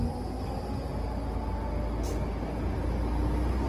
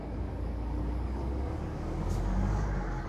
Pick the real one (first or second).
first